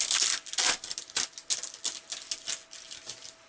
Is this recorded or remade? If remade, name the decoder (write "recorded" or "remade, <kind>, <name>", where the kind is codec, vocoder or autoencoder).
recorded